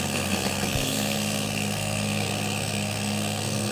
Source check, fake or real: fake